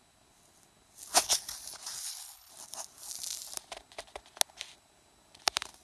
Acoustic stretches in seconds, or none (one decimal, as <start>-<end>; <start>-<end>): 0.0-2.0; 2.5-5.8